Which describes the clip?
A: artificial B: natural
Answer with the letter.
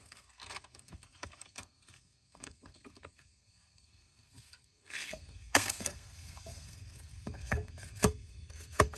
A